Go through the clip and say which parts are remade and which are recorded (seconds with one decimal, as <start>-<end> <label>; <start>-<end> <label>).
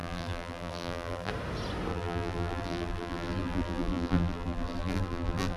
0.0-1.3 remade; 1.3-1.9 recorded; 1.9-5.6 remade